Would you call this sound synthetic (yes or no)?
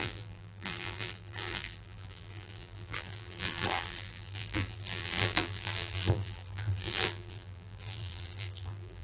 yes